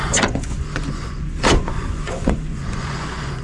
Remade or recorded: remade